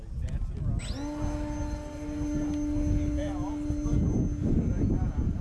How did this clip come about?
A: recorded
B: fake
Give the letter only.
A